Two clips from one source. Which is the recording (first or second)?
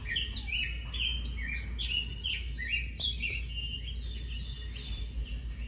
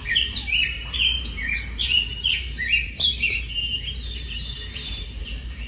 first